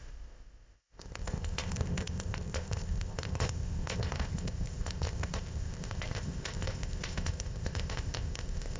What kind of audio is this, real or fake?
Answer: fake